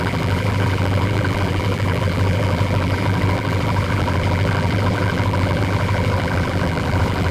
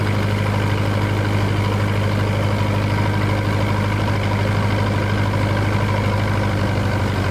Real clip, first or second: second